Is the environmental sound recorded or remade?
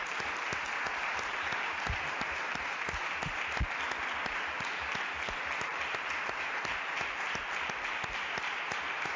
recorded